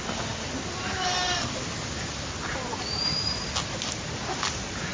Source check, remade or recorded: recorded